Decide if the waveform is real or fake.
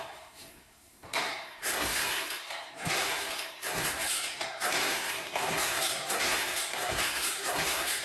fake